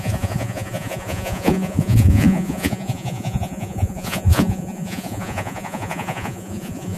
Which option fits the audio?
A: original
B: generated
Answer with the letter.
B